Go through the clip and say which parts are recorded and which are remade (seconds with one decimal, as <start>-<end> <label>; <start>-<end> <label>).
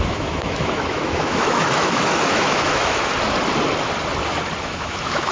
0.0-3.1 remade; 3.1-4.6 recorded; 4.6-5.3 remade